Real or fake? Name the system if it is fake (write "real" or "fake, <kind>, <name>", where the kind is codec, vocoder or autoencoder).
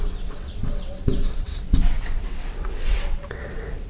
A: fake, vocoder, WaveNeXt